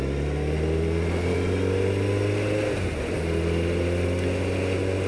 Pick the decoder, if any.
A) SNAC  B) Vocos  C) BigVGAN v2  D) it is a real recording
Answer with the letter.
D